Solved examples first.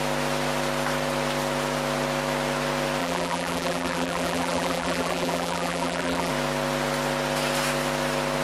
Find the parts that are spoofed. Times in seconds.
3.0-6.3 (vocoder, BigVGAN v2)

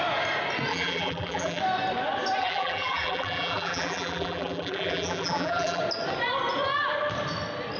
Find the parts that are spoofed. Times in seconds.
0.7-1.6 (vocoder, BigVGAN v2); 2.4-5.8

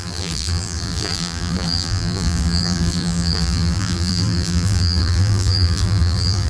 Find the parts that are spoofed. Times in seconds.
0.0-6.5 (vocoder, BigVGAN v2)

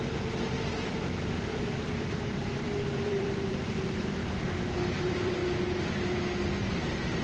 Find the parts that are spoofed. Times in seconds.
0.0-4.2 (vocoder, BigVGAN v2); 5.0-5.4; 6.7-7.2

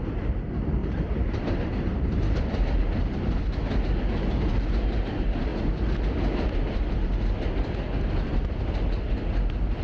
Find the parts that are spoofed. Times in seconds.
0.8-3.4 (vocoder, BigVGAN v2)

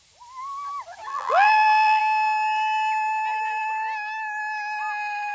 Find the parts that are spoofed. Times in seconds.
1.1-2.0 (vocoder, BigVGAN v2)

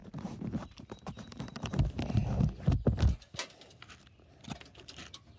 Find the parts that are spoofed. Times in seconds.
0.0-1.8 (vocoder, BigVGAN v2)